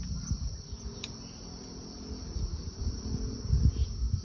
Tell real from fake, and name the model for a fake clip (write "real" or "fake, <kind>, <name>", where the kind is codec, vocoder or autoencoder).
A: real